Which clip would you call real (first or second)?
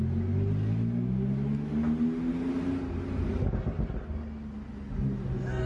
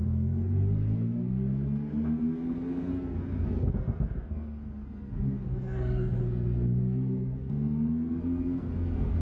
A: first